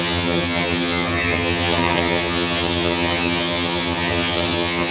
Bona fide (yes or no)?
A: no